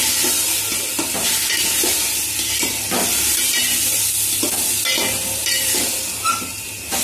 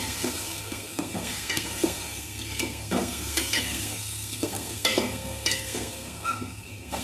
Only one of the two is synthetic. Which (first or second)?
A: second